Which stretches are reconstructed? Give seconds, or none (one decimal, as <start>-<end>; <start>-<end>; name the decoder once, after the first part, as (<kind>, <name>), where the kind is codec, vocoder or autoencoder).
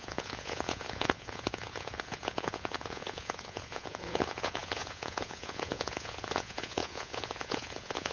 0.0-8.1 (vocoder, Vocos)